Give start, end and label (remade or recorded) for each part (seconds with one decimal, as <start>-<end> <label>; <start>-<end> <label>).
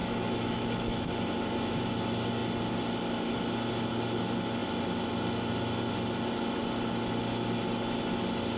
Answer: 0.0-1.1 remade; 1.1-8.6 recorded